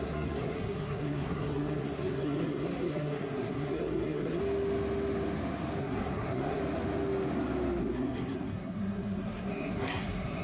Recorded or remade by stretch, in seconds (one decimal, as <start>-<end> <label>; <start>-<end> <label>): 0.0-4.4 remade; 4.4-5.8 recorded; 5.8-6.6 remade; 6.6-7.8 recorded; 7.8-10.4 remade